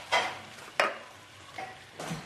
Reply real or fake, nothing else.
real